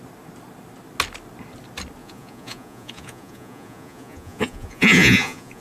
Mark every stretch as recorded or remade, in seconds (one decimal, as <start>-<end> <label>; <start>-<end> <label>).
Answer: 0.0-2.0 recorded; 2.0-5.6 remade